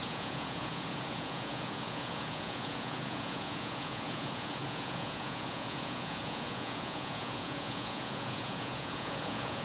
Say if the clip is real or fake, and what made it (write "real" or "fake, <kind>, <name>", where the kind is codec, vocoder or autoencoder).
fake, vocoder, Vocos